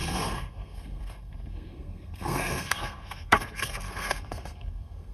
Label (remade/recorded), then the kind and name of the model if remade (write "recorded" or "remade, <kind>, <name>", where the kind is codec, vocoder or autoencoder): remade, codec, SNAC